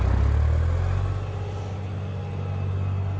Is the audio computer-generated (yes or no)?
no